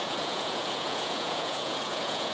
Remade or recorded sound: remade